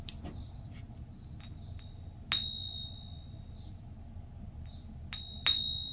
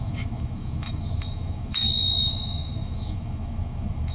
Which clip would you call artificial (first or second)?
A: second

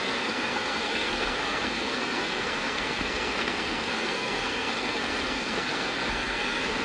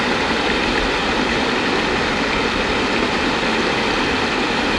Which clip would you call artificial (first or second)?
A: first